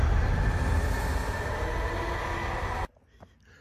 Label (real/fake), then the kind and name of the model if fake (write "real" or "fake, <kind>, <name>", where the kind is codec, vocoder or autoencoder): real